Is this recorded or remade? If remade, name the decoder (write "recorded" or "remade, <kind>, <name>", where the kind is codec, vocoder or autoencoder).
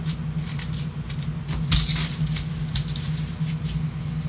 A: recorded